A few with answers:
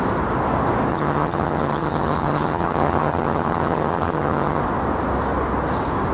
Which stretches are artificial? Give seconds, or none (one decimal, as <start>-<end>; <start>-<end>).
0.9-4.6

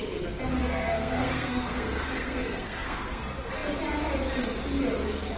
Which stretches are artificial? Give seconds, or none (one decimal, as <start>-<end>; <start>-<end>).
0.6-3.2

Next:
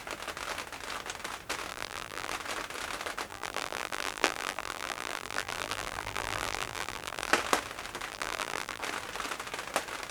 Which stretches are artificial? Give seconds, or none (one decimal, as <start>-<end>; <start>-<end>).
1.7-2.3; 3.3-7.3; 8.1-8.8

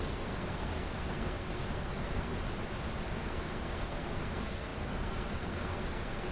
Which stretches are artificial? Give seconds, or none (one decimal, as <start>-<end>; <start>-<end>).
0.0-2.3; 3.2-6.3

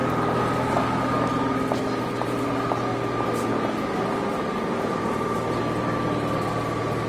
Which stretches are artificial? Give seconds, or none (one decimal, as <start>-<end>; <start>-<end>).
4.9-5.6

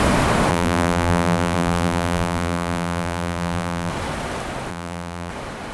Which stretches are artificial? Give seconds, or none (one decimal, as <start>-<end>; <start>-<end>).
0.5-3.9; 4.7-5.3

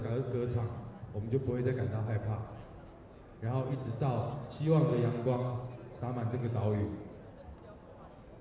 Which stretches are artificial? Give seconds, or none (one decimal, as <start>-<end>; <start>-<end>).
4.9-5.7; 6.4-7.1